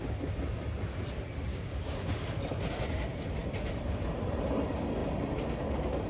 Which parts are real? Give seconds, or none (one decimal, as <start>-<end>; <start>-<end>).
0.0-1.5; 2.3-6.1